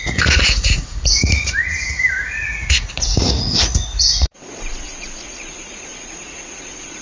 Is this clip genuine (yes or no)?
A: no